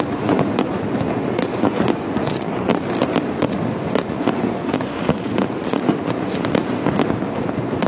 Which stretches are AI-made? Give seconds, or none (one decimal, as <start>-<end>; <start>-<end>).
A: 0.0-2.7; 3.4-6.8; 7.5-7.9